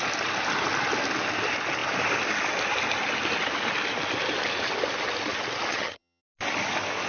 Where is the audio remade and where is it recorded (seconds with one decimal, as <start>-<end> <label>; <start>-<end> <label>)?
0.0-5.7 recorded; 5.7-6.2 remade; 6.2-7.1 recorded